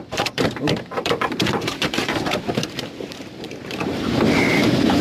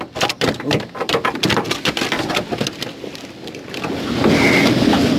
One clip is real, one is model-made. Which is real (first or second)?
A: second